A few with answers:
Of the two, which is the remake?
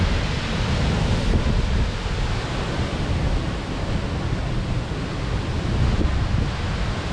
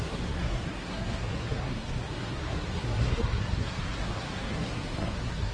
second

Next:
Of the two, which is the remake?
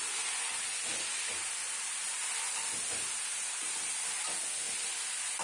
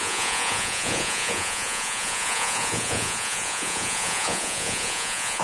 second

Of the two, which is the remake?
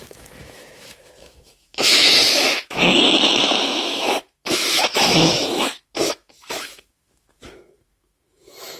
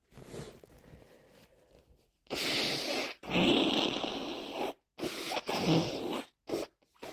first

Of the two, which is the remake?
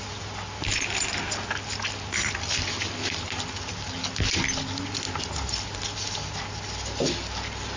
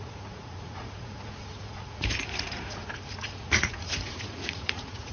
second